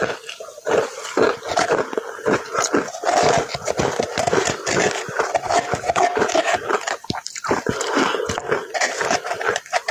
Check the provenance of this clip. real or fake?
fake